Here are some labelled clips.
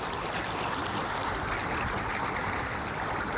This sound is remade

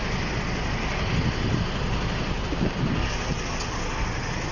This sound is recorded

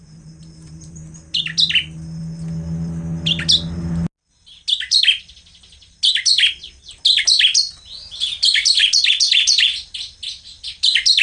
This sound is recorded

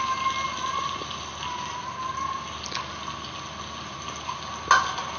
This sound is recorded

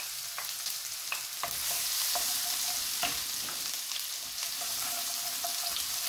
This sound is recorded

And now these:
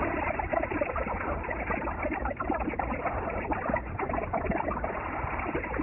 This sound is recorded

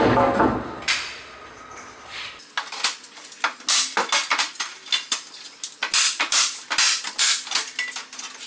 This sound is recorded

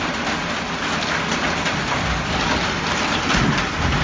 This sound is recorded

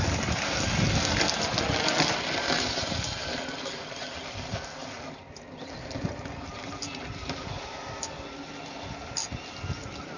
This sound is recorded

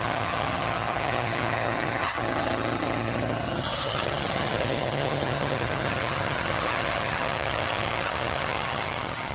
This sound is remade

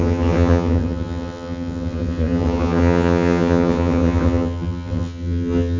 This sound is remade